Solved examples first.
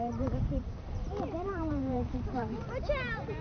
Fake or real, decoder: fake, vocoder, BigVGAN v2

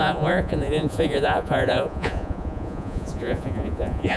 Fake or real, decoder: fake, vocoder, Vocos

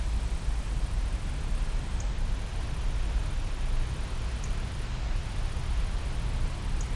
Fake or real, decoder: real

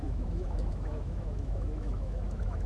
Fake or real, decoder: fake, autoencoder, DAC-VAE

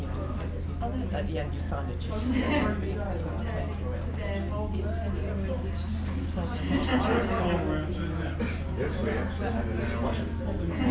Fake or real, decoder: real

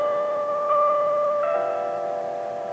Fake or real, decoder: real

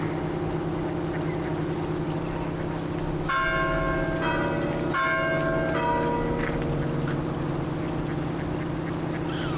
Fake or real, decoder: real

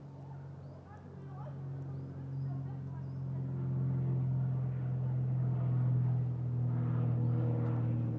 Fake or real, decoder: real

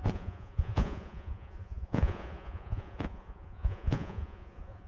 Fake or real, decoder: fake, vocoder, Vocos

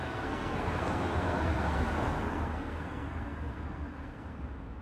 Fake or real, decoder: fake, codec, SNAC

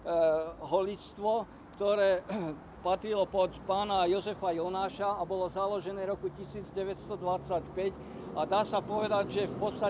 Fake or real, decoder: real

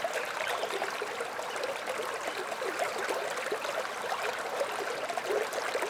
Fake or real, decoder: real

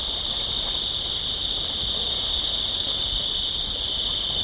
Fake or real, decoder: real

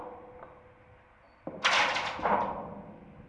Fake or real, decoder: real